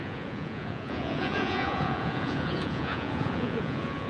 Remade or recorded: remade